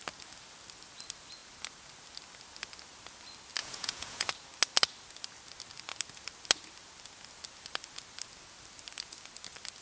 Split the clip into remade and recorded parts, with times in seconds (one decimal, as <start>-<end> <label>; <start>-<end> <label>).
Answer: 0.0-3.6 recorded; 3.6-4.3 remade; 4.3-9.8 recorded